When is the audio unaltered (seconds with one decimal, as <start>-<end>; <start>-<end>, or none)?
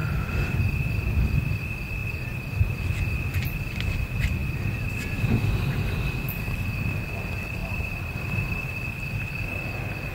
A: 1.6-2.0; 2.8-7.6; 8.8-10.1